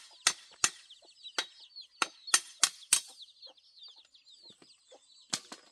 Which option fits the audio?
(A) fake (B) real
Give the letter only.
B